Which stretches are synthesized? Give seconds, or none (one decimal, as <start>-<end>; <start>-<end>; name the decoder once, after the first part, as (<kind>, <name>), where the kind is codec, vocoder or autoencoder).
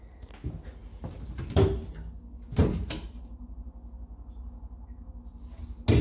0.8-1.9 (vocoder, BigVGAN v2); 2.6-3.7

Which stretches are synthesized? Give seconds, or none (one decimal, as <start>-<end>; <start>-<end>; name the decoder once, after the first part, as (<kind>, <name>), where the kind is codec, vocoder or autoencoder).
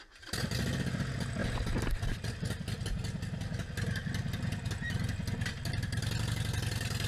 none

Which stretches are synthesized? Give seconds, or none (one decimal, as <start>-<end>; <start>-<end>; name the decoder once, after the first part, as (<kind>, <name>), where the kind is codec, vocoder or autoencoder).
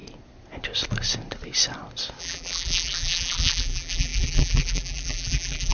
2.2-5.7 (vocoder, BigVGAN v2)